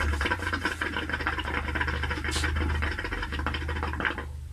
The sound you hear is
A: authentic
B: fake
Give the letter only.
A